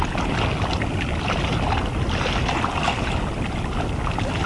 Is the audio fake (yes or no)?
no